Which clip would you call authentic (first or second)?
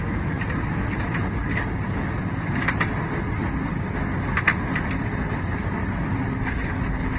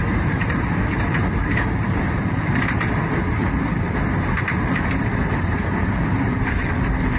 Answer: first